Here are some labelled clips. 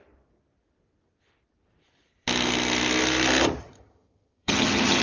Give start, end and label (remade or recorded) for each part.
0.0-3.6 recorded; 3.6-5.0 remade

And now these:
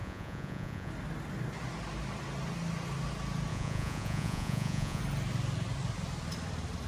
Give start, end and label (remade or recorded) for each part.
0.0-0.9 remade; 0.9-3.5 recorded; 3.5-5.0 remade; 5.0-6.9 recorded

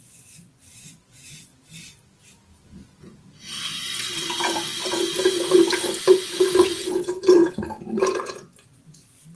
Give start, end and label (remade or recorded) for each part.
0.0-1.5 remade; 1.5-6.1 recorded; 6.1-9.4 remade

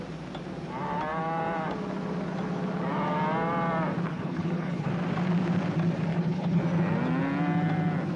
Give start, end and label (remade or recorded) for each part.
0.0-4.1 recorded; 4.1-4.9 remade; 4.9-6.1 recorded; 6.1-6.6 remade; 6.6-8.2 recorded

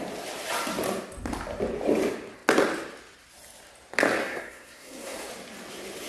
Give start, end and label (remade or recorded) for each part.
0.0-4.2 recorded; 4.2-5.3 remade; 5.3-6.1 recorded

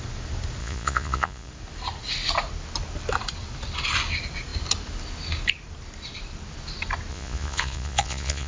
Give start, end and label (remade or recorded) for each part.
0.0-0.6 recorded; 0.6-1.5 remade; 1.5-7.1 recorded; 7.1-8.5 remade

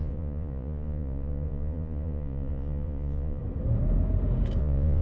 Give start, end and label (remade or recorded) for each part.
0.0-3.4 remade; 3.4-4.6 recorded; 4.6-5.0 remade

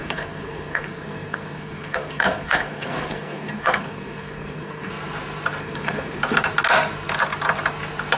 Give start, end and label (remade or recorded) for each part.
0.0-4.9 remade; 4.9-5.6 recorded; 5.6-6.2 remade; 6.2-8.2 recorded